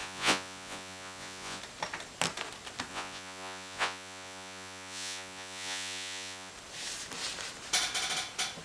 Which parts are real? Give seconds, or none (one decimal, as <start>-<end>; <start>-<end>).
1.6-2.9; 6.5-8.6